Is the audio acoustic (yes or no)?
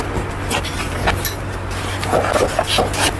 yes